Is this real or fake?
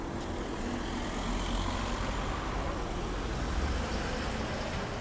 real